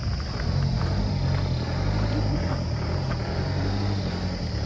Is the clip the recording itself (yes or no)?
yes